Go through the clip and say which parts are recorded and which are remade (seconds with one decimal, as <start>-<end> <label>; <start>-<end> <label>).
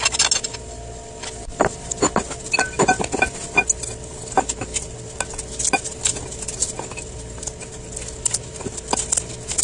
0.0-9.6 recorded